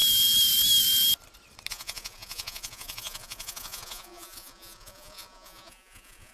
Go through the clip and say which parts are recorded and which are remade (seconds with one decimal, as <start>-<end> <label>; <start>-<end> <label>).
0.0-1.7 recorded; 1.7-6.3 remade